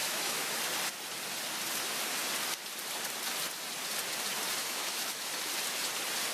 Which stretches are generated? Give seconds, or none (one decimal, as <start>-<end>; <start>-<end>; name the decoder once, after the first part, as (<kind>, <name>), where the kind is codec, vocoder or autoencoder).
0.0-0.6 (autoencoder, DAC-VAE); 4.6-5.4